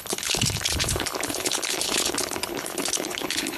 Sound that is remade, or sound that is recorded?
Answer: remade